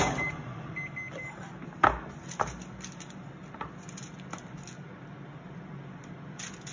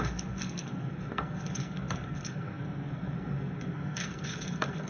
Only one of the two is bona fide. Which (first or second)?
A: first